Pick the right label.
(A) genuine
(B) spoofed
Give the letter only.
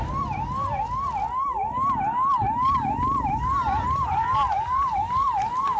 A